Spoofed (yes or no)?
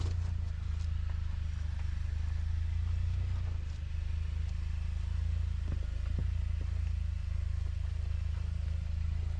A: no